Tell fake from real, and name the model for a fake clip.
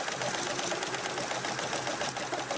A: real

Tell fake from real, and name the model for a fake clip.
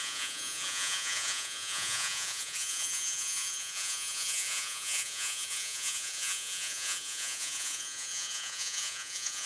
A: fake, vocoder, Vocos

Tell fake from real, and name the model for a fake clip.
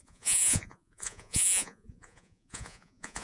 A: fake, vocoder, Vocos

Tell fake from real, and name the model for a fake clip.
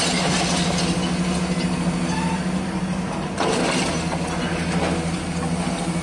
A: real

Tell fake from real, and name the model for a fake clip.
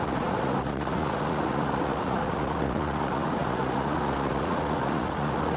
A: fake, vocoder, Vocos